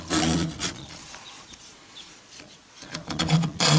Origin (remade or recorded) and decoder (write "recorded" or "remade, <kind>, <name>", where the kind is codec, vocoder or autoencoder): remade, vocoder, Vocos